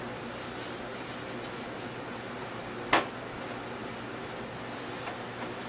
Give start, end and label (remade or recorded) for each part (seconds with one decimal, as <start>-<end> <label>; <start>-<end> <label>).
0.0-5.7 recorded